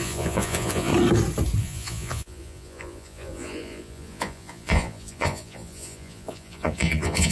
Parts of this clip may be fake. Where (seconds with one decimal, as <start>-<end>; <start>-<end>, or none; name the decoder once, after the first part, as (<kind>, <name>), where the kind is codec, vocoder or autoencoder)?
0.0-0.9 (vocoder, Vocos); 1.6-7.3

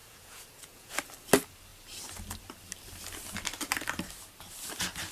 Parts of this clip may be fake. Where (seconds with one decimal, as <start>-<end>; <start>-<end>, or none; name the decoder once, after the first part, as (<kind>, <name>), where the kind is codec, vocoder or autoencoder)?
0.0-0.9 (vocoder, Vocos)

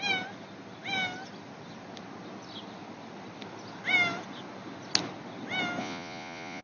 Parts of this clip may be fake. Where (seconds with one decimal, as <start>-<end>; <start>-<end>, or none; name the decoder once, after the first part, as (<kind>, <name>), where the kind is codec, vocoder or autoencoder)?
5.8-6.6 (vocoder, Vocos)

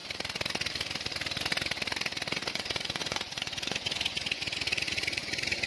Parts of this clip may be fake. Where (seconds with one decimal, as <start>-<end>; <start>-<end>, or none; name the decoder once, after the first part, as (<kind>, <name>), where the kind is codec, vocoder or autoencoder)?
2.5-5.7 (vocoder, Vocos)